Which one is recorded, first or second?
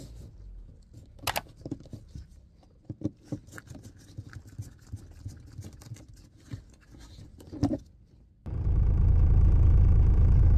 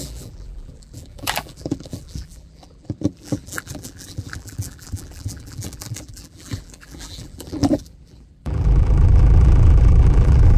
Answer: first